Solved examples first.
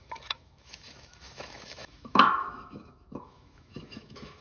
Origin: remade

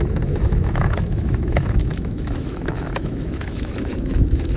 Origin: remade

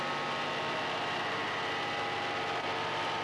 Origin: recorded